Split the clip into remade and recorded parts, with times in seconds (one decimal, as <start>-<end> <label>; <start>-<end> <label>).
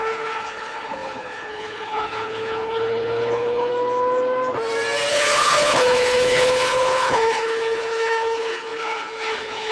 0.0-3.7 remade; 3.7-5.1 recorded; 5.1-9.7 remade